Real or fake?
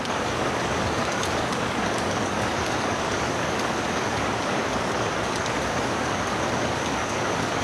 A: fake